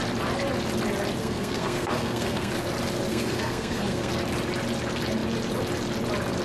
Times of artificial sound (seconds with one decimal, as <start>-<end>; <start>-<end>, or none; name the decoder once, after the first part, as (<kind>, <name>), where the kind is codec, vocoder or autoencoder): 1.2-2.5 (codec, SNAC); 3.1-4.1